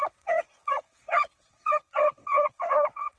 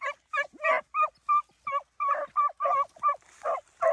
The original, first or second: second